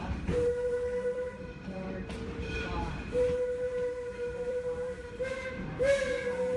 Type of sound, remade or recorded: remade